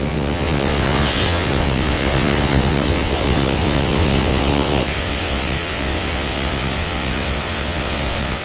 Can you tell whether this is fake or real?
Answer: fake